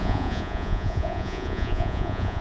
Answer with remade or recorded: remade